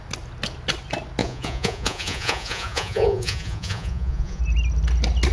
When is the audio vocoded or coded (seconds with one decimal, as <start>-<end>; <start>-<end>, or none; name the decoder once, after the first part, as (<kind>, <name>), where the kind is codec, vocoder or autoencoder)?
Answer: 1.2-4.4 (vocoder, Vocos)